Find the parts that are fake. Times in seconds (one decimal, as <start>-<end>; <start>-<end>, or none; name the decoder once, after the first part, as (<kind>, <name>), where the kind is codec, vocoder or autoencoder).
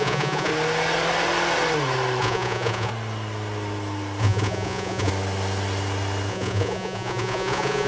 0.0-0.5 (vocoder, Vocos); 2.2-2.9; 4.2-5.1; 6.3-7.9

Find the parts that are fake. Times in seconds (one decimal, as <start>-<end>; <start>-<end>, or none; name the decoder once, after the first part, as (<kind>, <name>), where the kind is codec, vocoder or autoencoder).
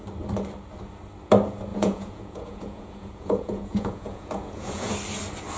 1.7-4.9 (vocoder, Vocos)